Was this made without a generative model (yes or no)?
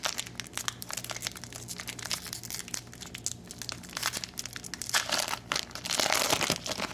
yes